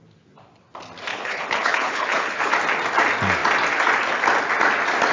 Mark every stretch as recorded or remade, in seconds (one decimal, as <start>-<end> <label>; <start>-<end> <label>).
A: 0.0-1.1 recorded; 1.1-2.5 remade; 2.5-5.1 recorded